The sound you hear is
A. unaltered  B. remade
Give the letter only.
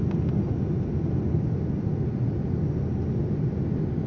A